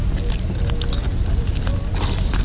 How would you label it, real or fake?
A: real